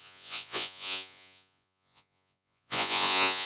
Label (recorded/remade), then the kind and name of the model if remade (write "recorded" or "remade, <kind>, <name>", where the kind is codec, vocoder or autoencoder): remade, vocoder, Vocos